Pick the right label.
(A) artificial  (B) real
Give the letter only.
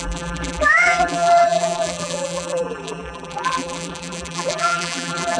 A